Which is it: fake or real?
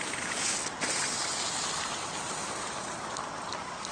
real